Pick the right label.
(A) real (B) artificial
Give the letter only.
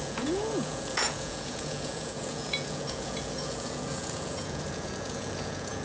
B